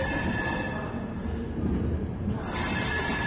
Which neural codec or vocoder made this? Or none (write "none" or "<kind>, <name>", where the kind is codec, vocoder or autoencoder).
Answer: none